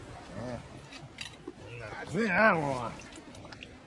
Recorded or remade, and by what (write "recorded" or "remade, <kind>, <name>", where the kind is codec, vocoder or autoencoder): recorded